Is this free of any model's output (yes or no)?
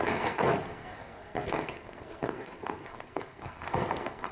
no